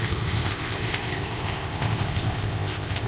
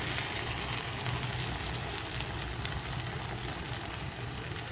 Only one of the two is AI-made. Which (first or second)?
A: first